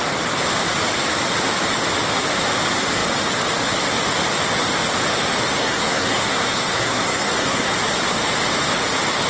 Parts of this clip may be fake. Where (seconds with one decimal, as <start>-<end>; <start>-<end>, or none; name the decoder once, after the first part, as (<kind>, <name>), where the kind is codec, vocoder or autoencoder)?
5.6-7.7 (codec, SNAC)